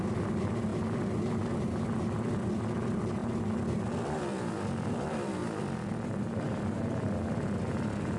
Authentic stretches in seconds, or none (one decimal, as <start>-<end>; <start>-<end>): 0.0-8.2